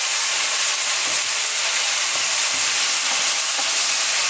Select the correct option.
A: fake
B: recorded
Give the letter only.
B